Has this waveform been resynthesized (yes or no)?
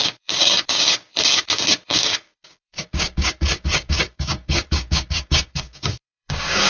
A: yes